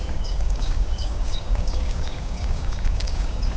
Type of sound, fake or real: fake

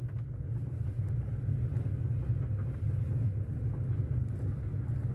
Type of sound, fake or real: real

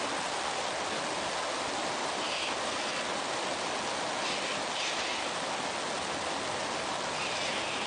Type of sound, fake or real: real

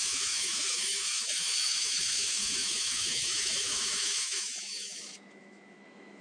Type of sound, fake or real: fake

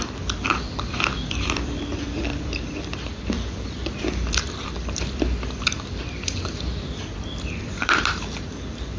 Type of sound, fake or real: fake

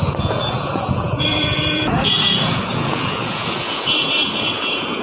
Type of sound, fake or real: fake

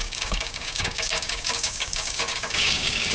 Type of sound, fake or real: fake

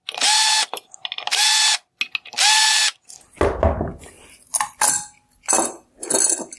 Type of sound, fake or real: real